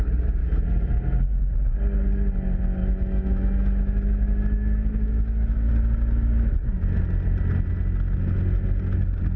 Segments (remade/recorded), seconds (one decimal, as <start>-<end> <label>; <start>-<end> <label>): 0.0-0.4 recorded; 0.4-0.9 remade; 0.9-2.8 recorded; 2.8-5.7 remade; 5.7-9.4 recorded